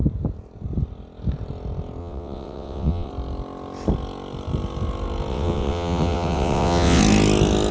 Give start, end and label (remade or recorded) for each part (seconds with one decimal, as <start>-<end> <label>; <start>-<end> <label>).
0.0-2.0 recorded; 2.0-3.1 remade; 3.1-5.3 recorded; 5.3-7.0 remade; 7.0-7.7 recorded